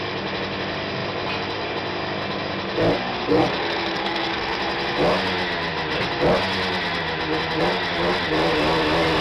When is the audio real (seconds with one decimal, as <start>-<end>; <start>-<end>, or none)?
0.0-3.3; 4.6-9.2